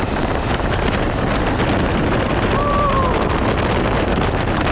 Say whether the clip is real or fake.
real